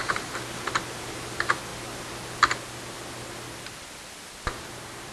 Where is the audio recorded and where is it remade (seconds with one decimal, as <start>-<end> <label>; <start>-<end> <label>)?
0.0-1.7 remade; 1.7-4.6 recorded; 4.6-5.1 remade